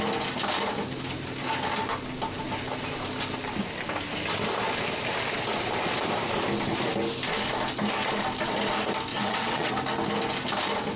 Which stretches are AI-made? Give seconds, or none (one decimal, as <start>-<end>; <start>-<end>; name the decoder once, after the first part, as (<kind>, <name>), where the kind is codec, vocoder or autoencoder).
9.1-9.7 (vocoder, WaveNeXt)